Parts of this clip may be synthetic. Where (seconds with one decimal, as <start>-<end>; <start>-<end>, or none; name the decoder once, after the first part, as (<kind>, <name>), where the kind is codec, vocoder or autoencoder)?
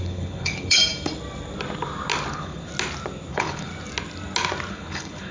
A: 0.0-0.8 (codec, HILCodec); 2.3-2.7; 3.3-3.7; 4.7-5.3